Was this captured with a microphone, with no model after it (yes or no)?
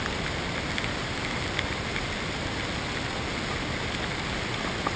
yes